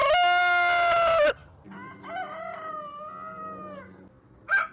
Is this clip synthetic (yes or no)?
no